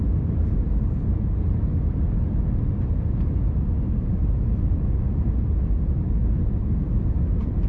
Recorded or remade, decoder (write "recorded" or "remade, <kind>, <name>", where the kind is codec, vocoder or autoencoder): remade, vocoder, BigVGAN v2